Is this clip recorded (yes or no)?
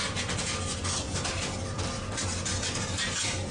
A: yes